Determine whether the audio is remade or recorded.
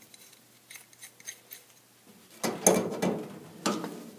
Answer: recorded